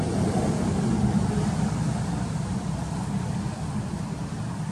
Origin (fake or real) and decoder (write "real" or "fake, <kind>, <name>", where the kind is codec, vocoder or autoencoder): real